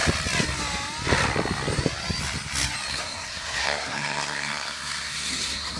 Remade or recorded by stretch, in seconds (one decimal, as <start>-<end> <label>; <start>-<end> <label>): 0.0-2.9 recorded; 2.9-5.8 remade